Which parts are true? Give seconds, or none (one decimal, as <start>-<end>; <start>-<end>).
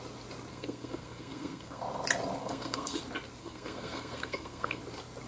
0.0-0.5; 1.8-2.4; 3.0-3.4; 4.8-5.3